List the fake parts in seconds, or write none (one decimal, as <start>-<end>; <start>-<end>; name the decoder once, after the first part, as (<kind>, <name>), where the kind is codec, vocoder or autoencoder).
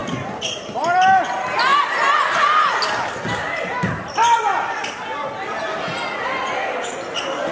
none